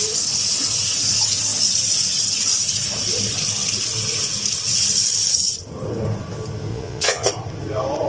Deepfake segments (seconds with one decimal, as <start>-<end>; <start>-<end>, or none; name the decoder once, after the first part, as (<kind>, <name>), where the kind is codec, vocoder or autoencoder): 6.7-7.3 (vocoder, Vocos)

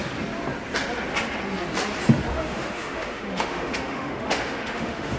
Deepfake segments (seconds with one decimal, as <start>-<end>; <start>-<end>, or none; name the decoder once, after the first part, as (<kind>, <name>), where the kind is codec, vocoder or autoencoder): 2.3-5.2 (autoencoder, DAC-VAE)

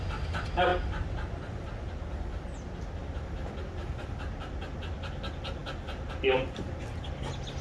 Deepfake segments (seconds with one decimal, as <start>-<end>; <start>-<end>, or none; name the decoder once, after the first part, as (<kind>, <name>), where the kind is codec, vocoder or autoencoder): none

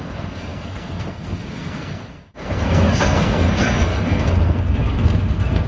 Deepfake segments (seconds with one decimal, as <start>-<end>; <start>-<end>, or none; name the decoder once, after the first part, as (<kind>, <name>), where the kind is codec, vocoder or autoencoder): 0.0-5.7 (codec, SNAC)

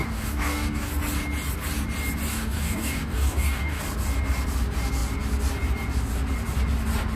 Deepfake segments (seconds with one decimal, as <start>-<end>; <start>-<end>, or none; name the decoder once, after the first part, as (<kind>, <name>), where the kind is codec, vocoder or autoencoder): 0.0-0.9 (codec, DAC); 2.3-3.8

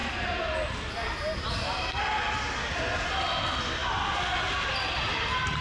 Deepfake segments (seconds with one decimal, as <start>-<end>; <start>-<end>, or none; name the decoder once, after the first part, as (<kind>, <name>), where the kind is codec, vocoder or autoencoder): none

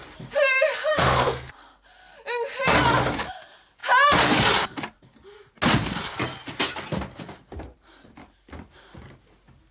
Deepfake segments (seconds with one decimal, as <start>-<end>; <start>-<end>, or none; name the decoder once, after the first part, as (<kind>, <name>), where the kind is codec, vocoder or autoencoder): 0.9-1.5 (codec, SNAC)